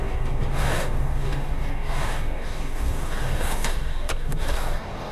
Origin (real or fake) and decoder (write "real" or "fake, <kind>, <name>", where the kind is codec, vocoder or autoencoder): fake, codec, DAC